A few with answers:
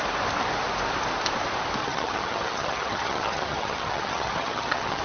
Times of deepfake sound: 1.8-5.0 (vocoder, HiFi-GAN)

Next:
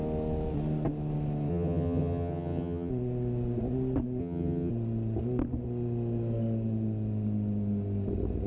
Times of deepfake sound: 1.5-2.9 (vocoder, HiFi-GAN); 4.2-4.7

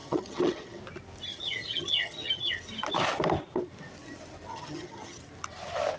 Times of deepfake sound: 0.0-0.8 (vocoder, HiFi-GAN); 1.3-2.5; 4.5-5.2

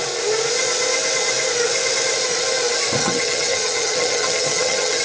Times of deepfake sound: 3.0-5.0 (vocoder, HiFi-GAN)